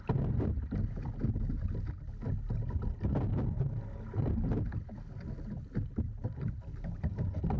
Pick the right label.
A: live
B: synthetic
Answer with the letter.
A